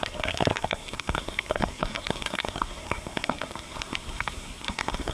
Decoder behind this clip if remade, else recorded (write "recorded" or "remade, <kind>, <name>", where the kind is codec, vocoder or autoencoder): remade, codec, SNAC